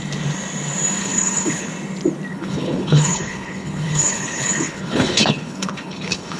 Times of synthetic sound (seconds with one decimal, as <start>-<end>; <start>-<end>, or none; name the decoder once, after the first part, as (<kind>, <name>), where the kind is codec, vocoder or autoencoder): 1.0-1.7 (codec, HILCodec); 2.3-6.4